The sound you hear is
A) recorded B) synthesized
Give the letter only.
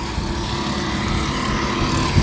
A